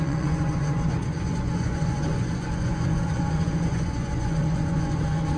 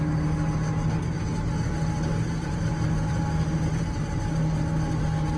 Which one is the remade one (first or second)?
first